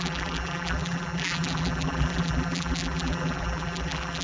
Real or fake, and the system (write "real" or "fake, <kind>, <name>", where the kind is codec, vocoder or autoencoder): fake, vocoder, BigVGAN v2